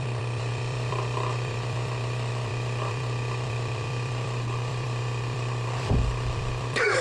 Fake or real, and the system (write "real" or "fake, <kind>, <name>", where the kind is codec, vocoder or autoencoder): fake, vocoder, BigVGAN v2